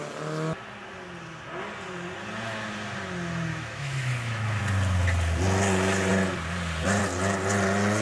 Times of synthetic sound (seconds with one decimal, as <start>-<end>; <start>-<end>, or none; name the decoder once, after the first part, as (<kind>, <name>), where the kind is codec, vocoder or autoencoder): 3.5-4.6 (autoencoder, DAC-VAE)